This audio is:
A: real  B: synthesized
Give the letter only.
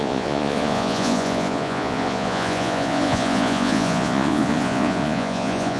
B